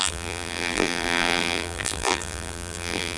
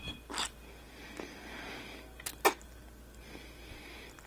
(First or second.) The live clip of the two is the second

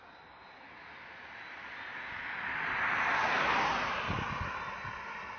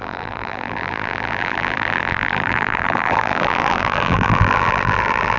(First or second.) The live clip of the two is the first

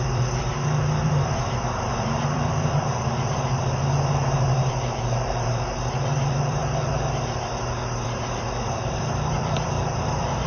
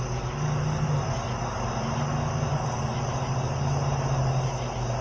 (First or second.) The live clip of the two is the second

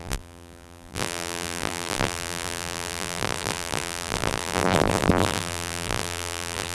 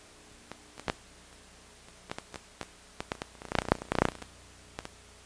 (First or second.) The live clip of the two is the second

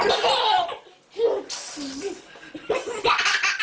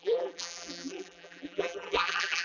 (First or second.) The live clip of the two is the first